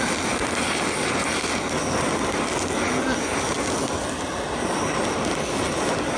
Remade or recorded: recorded